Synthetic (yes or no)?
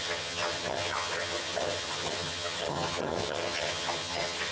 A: yes